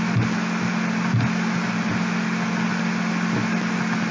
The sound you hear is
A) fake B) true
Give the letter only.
B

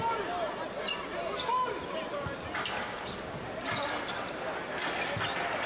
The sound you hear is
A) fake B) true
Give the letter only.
B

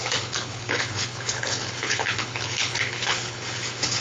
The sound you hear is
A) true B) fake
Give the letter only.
B